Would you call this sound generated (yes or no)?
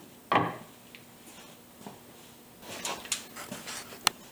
no